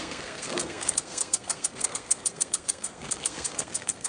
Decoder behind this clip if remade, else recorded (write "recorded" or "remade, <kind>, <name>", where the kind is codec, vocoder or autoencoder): remade, codec, SNAC